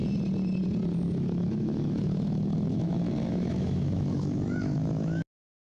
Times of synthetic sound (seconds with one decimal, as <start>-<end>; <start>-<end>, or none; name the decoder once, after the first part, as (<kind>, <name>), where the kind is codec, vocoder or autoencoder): 1.2-5.7 (autoencoder, DAC-VAE)

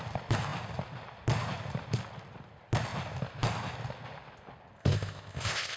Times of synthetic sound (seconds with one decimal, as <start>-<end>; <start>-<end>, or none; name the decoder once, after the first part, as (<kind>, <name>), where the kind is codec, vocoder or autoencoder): 4.8-5.8 (codec, ZipCodec)